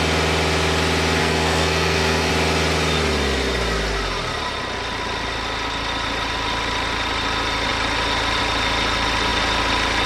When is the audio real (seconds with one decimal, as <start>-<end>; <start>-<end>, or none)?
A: 0.0-1.2; 2.3-10.1